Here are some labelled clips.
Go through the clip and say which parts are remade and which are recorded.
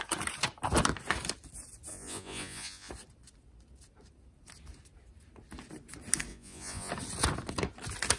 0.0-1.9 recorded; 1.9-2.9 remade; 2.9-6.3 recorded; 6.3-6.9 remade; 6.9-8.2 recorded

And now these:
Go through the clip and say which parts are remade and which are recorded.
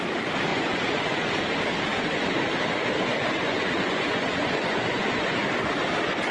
0.0-0.5 recorded; 0.5-1.3 remade; 1.3-1.9 recorded; 1.9-2.4 remade; 2.4-3.1 recorded; 3.1-5.5 remade; 5.5-6.3 recorded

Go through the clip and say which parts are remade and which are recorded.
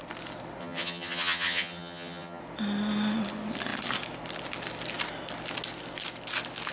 0.0-0.6 recorded; 0.6-2.4 remade; 2.4-6.7 recorded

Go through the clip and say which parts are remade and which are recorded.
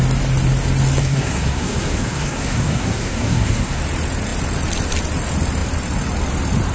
0.0-1.0 recorded; 1.0-3.8 remade; 3.8-6.7 recorded